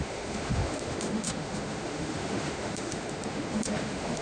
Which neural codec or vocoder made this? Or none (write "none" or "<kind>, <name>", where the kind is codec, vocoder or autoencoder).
autoencoder, DAC-VAE